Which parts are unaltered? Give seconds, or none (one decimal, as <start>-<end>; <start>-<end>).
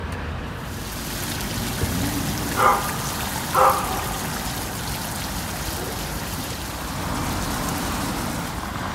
0.8-6.1; 6.8-7.2; 8.3-8.9